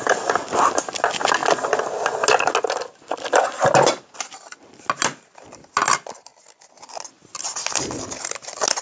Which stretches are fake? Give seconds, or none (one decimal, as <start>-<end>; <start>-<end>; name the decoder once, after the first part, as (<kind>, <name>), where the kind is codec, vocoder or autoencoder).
none